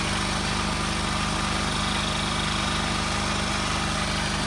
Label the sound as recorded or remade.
recorded